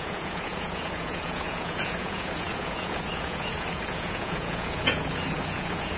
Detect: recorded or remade remade